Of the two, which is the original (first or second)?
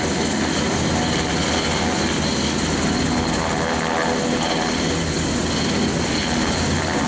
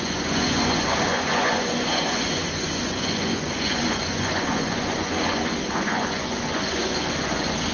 first